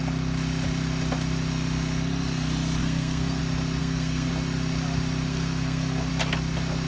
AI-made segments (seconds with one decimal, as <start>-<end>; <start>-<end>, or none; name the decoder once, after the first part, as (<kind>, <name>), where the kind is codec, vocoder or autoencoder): 2.8-3.4 (codec, SNAC); 3.8-4.3; 5.3-6.1